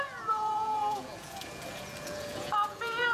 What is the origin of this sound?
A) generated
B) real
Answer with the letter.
A